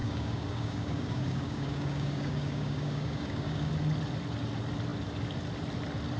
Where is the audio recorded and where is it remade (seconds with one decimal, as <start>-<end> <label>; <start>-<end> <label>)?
0.0-3.7 remade; 3.7-6.2 recorded